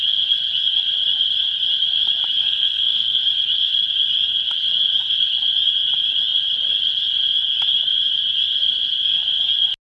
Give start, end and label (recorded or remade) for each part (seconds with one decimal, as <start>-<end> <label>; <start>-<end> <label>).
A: 0.0-2.4 recorded; 2.4-3.2 remade; 3.2-9.8 recorded